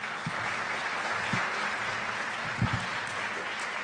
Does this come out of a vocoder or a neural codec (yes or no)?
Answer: no